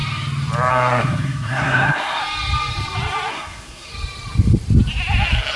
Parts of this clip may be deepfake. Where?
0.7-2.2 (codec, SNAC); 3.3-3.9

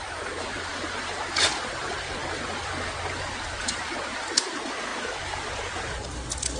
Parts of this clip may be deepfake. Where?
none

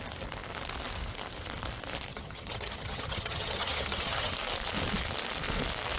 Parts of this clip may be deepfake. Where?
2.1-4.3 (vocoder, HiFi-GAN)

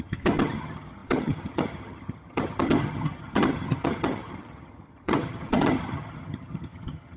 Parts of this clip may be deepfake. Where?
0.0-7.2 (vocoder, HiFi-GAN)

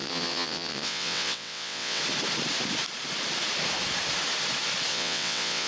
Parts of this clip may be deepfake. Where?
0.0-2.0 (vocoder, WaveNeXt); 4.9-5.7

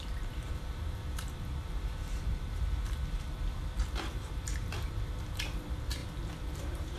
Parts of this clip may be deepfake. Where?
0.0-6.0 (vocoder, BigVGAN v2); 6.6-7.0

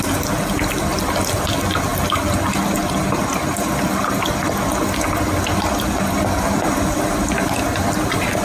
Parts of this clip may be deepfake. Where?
none